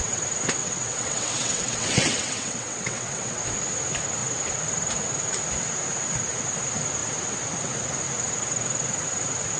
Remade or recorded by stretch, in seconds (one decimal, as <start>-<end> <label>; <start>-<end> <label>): 0.0-0.6 recorded; 0.6-3.4 remade; 3.4-9.6 recorded